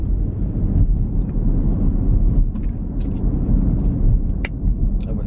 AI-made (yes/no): no